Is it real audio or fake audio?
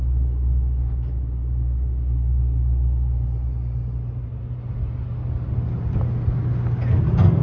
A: real